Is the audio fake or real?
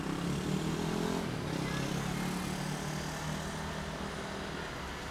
real